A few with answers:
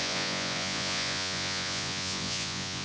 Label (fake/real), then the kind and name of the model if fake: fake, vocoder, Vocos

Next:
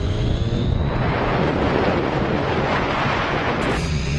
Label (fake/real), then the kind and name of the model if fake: fake, vocoder, Vocos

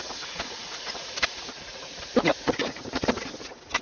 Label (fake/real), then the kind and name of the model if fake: fake, vocoder, Vocos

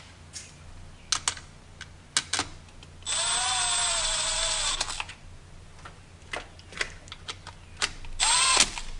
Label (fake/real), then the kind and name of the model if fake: real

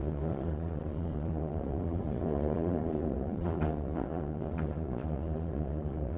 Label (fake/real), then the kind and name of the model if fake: fake, vocoder, Vocos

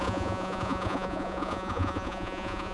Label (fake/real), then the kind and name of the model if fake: fake, vocoder, Vocos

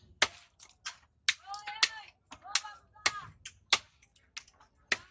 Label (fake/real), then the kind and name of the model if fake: real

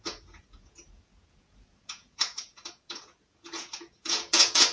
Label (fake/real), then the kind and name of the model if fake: fake, vocoder, Vocos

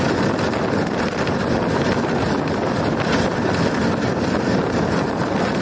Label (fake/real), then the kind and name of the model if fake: real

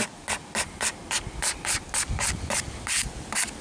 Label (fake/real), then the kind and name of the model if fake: real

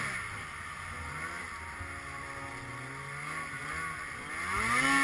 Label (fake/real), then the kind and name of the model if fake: real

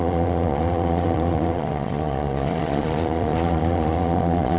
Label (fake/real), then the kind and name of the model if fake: fake, vocoder, Vocos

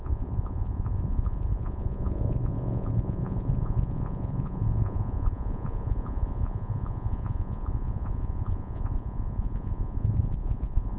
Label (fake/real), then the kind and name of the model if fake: fake, vocoder, Vocos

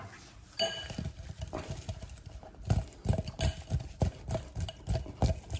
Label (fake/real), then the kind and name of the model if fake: real